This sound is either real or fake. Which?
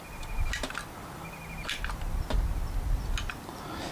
real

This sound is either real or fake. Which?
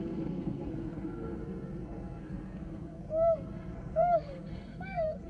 fake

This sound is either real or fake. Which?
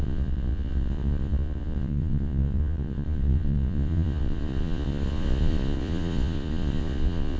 fake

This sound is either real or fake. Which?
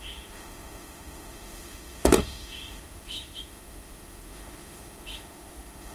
fake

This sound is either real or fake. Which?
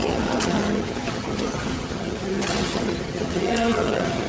fake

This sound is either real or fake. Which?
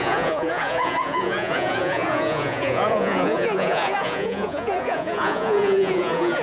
fake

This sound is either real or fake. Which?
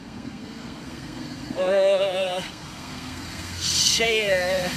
fake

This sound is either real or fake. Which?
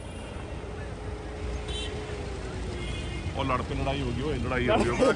real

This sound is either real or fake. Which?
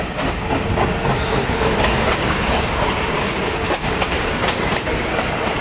fake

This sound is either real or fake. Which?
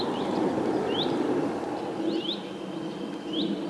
real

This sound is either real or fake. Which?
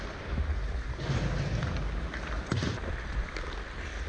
real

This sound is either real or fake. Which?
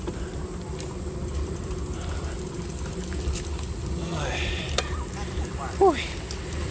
real